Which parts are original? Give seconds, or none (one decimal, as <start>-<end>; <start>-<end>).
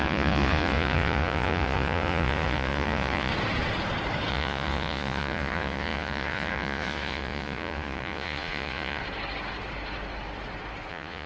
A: 3.3-4.3; 9.0-10.9